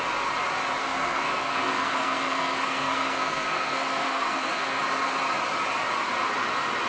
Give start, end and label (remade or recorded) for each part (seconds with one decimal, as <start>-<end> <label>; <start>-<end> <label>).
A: 0.0-0.8 recorded; 0.8-4.8 remade; 4.8-6.9 recorded